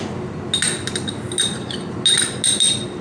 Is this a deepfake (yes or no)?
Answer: no